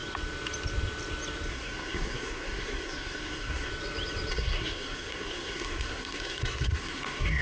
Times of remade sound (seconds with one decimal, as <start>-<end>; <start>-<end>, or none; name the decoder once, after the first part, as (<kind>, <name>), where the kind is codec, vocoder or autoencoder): 1.5-3.7 (codec, SNAC); 4.3-7.4